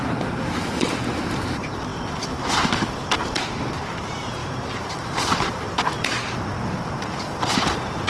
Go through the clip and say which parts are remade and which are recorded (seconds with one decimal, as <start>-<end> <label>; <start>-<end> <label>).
0.0-8.1 remade